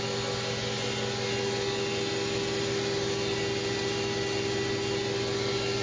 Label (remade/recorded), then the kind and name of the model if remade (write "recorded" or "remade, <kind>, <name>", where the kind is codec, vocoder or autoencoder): recorded